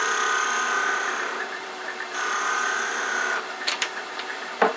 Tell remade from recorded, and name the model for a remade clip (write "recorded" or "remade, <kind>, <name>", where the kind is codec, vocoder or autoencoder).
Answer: remade, vocoder, BigVGAN v2